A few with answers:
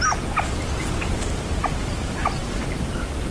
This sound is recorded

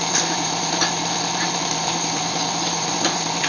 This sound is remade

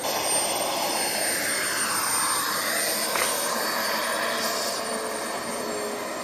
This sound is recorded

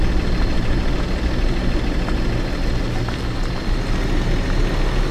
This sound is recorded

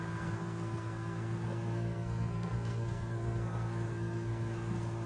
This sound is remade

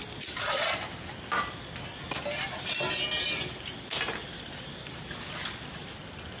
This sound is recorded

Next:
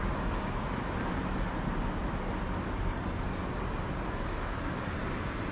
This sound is recorded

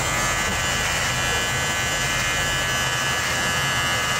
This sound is recorded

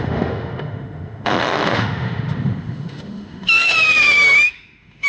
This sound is remade